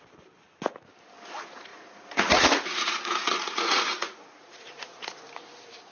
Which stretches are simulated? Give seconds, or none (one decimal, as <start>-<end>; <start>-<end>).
1.7-5.2

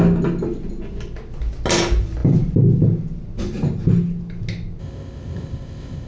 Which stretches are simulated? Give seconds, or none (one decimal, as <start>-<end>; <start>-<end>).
4.8-6.1

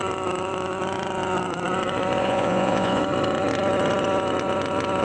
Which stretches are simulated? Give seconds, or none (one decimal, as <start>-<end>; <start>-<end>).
2.2-3.0

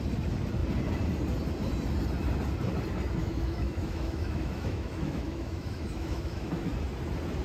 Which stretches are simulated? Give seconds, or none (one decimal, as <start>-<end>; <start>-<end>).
3.2-6.7

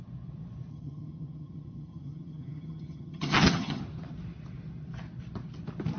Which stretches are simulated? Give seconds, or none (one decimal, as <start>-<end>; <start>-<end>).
0.7-3.8